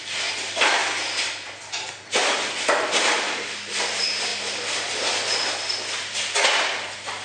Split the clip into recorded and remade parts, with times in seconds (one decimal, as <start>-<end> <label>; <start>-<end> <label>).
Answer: 0.0-0.8 remade; 0.8-2.6 recorded; 2.6-4.3 remade; 4.3-7.2 recorded